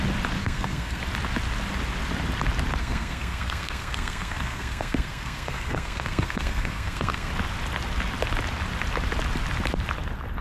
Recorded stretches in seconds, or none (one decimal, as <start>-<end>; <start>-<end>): 0.0-0.4; 1.0-2.8; 7.3-10.4